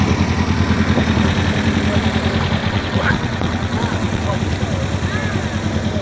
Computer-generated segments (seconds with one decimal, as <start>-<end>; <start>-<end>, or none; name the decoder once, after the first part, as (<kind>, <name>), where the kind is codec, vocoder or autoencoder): 2.6-4.4 (vocoder, WaveNeXt)